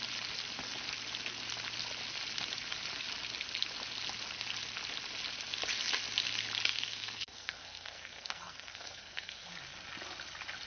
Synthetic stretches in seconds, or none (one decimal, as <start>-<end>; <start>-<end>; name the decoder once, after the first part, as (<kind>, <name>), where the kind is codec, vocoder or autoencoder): 6.7-9.5 (codec, SNAC)